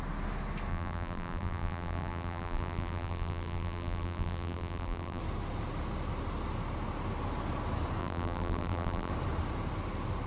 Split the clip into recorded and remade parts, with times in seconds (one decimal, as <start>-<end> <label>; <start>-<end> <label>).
0.0-0.7 recorded; 0.7-5.2 remade; 5.2-8.0 recorded; 8.0-9.1 remade; 9.1-10.3 recorded